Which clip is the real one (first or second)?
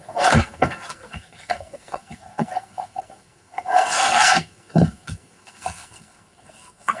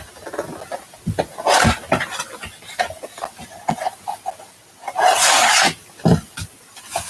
second